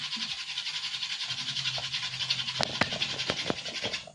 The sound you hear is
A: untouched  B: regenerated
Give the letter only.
A